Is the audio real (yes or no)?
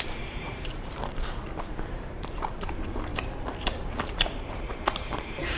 no